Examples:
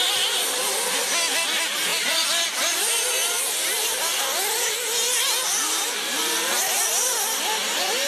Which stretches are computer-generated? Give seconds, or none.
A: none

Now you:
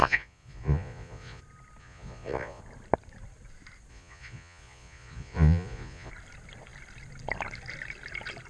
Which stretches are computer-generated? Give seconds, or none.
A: 0.0-1.4 (vocoder, Vocos); 1.8-2.6; 3.9-6.1

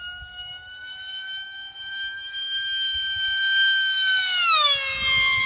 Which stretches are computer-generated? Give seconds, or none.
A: none

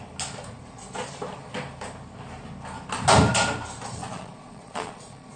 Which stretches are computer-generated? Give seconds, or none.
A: 4.0-5.4 (vocoder, Vocos)

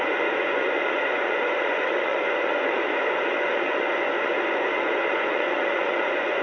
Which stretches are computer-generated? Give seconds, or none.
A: 0.0-6.4 (vocoder, Vocos)

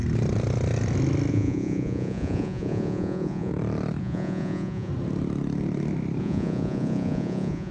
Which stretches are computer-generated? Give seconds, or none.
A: 1.3-3.5 (vocoder, Vocos); 4.0-4.9; 6.2-7.7

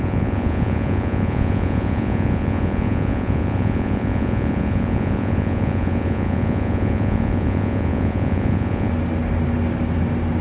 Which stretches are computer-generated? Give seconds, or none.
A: 0.0-8.9 (vocoder, Vocos)